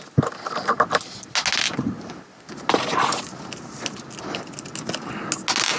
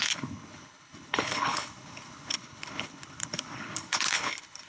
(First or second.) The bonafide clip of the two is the first